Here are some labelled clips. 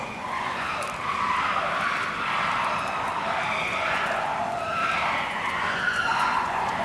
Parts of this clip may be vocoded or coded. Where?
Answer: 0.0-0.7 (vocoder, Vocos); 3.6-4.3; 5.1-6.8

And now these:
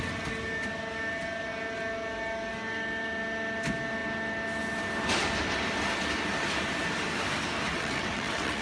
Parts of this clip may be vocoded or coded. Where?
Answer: 7.7-8.6 (vocoder, WaveNeXt)

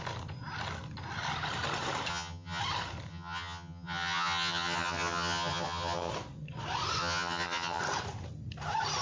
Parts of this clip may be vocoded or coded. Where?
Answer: 2.1-2.6 (vocoder, HiFi-GAN); 3.1-6.1; 7.0-7.8

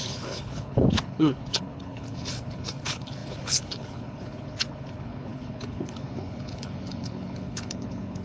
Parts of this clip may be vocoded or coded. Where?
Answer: 0.0-8.2 (codec, HILCodec)

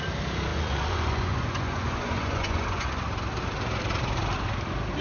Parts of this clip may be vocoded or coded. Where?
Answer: 0.5-2.9 (vocoder, Vocos)

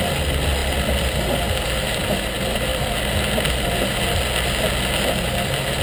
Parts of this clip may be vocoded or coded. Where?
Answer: none

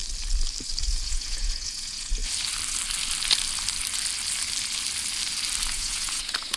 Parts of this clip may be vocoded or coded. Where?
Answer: 0.8-2.2 (vocoder, Vocos); 5.7-6.6

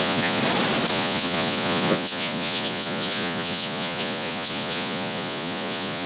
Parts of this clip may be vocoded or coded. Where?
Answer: 0.0-0.4 (vocoder, Vocos); 0.9-6.1